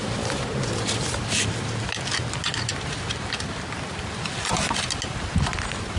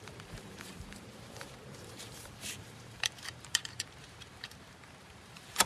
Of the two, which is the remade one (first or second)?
second